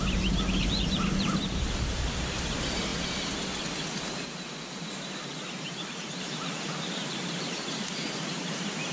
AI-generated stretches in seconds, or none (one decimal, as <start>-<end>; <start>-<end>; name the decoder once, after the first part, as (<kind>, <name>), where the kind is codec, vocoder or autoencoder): 0.0-2.9 (vocoder, BigVGAN v2); 5.4-8.9